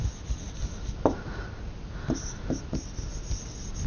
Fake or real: real